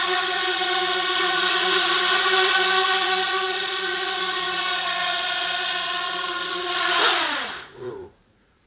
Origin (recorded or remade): remade